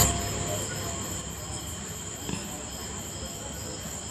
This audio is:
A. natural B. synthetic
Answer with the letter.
A